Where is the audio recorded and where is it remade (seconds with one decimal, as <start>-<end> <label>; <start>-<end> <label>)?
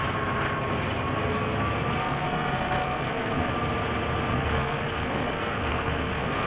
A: 0.0-2.0 recorded; 2.0-3.5 remade; 3.5-4.3 recorded; 4.3-6.5 remade